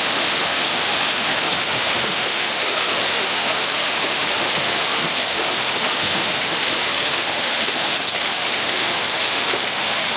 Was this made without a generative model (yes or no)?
no